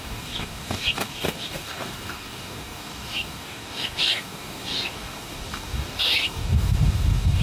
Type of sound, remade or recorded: remade